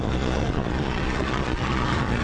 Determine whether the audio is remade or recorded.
remade